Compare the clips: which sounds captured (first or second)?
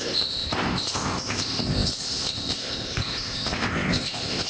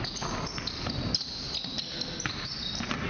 second